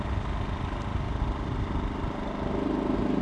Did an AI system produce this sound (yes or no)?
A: no